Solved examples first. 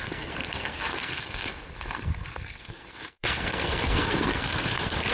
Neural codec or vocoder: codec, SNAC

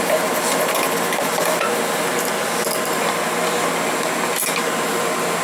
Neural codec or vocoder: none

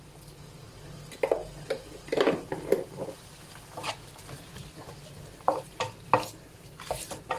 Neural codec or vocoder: none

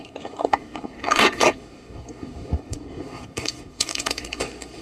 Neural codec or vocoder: codec, SNAC